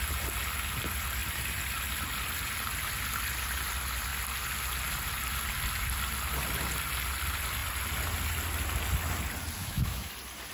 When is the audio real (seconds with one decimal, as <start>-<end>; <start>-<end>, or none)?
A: 0.0-9.6; 10.1-10.5